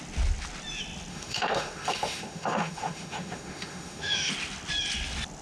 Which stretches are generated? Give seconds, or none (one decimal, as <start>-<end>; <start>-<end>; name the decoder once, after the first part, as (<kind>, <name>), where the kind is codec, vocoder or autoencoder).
1.1-4.3 (autoencoder, DAC-VAE)